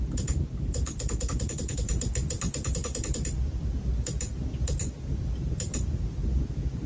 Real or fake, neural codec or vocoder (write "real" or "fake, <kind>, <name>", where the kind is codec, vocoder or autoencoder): real